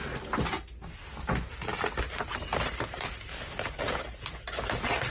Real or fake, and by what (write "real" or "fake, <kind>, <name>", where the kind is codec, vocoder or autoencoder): real